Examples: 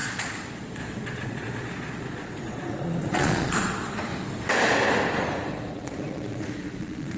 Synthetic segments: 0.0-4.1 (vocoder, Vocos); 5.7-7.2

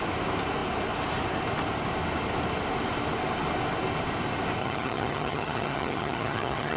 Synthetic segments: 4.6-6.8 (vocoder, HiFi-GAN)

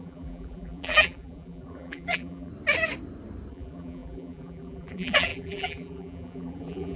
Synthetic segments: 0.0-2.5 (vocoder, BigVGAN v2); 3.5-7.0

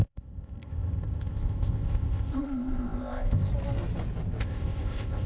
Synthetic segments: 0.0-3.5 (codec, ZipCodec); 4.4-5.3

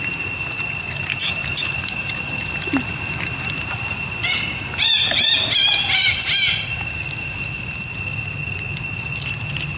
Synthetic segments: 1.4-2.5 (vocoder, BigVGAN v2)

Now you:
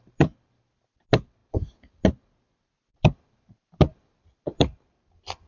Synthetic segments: none